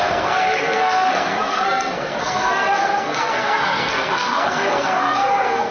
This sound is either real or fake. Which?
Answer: fake